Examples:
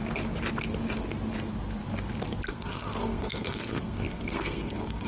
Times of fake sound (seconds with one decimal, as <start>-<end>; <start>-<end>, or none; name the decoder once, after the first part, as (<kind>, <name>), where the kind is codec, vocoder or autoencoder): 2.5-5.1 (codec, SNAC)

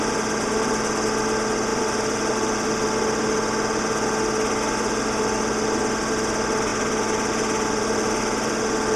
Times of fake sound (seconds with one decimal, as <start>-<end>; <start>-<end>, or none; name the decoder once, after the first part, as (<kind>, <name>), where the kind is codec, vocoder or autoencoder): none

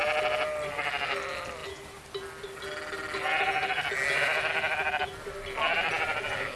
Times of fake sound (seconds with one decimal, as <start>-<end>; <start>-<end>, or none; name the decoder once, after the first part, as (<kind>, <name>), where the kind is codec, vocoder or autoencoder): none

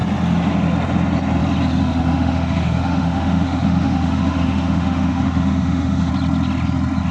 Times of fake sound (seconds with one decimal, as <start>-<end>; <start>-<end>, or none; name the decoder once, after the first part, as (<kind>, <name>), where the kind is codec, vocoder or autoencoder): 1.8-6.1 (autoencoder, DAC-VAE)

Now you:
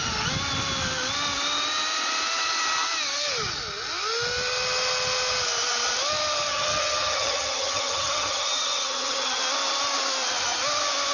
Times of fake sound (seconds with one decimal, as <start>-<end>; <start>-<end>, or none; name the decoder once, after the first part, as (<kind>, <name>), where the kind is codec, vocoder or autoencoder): 6.5-9.4 (vocoder, HiFi-GAN)

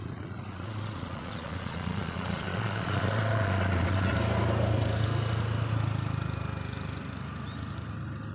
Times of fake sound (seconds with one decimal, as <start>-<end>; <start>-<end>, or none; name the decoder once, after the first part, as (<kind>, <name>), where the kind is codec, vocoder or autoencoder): 0.0-4.1 (vocoder, Vocos)

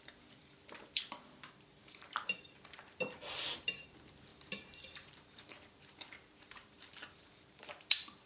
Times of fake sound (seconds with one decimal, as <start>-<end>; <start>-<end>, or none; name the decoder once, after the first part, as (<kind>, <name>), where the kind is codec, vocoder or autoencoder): 0.0-0.4 (vocoder, BigVGAN v2); 1.7-8.3